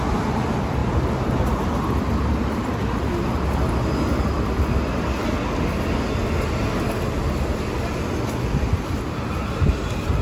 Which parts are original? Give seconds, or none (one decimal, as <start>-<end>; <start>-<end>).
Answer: 0.0-10.2